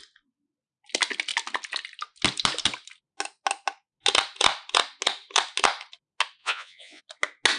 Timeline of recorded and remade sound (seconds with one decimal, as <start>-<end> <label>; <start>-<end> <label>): 0.0-6.4 recorded; 6.4-7.0 remade; 7.0-7.6 recorded